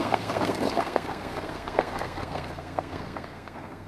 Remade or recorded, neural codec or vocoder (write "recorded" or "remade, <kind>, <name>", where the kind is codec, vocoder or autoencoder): remade, codec, SNAC